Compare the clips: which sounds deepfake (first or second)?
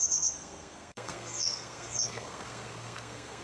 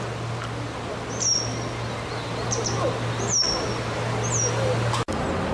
first